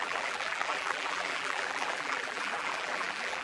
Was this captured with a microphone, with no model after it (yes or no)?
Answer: no